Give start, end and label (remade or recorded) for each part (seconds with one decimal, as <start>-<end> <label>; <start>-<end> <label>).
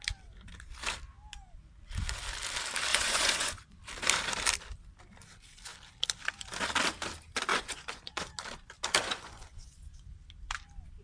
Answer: 0.0-2.9 recorded; 2.9-3.8 remade; 3.8-7.5 recorded; 7.5-8.3 remade; 8.3-9.0 recorded; 9.0-10.1 remade; 10.1-11.0 recorded